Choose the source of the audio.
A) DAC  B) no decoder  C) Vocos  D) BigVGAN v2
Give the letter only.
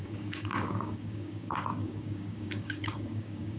A